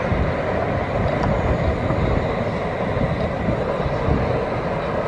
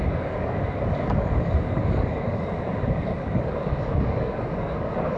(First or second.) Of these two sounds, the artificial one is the second